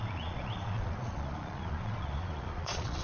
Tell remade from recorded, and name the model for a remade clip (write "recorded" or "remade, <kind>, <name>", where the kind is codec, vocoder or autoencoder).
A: remade, vocoder, Vocos